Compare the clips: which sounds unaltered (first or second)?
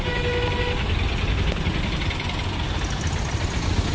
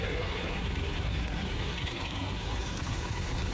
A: first